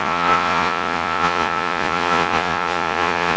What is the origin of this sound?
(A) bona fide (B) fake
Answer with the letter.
B